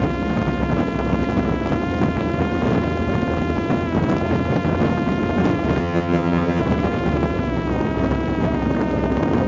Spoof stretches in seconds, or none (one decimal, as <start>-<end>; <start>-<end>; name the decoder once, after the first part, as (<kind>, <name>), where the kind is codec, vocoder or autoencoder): 5.8-6.6 (vocoder, HiFi-GAN)